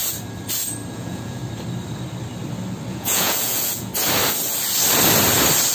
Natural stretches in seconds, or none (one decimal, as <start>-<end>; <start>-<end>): 0.0-0.9; 1.4-2.9; 3.9-5.7